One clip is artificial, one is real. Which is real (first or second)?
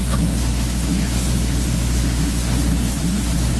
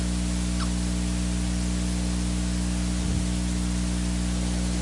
second